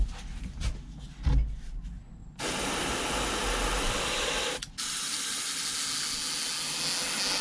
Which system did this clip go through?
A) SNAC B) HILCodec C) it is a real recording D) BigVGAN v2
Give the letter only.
C